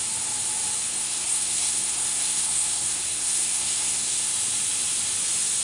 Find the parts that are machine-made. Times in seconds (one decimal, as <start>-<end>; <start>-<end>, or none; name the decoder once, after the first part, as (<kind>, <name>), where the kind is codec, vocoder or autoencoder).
0.9-4.3 (codec, SNAC)